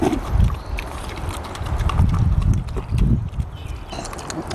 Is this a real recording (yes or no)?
yes